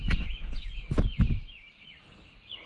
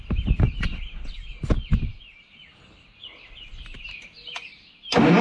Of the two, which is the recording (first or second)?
second